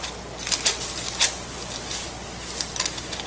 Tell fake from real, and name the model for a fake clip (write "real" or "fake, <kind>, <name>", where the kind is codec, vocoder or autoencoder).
real